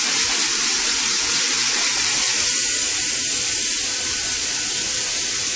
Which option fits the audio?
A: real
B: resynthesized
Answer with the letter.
B